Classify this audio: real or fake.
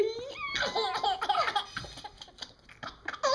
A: real